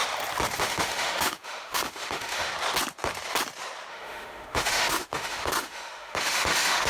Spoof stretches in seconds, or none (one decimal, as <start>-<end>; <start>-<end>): 0.6-2.5; 3.9-6.9